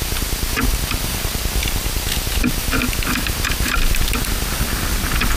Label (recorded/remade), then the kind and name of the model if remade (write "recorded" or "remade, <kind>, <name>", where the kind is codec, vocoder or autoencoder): recorded